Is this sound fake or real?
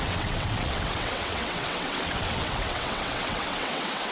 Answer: fake